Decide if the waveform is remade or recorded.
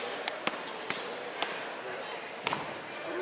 recorded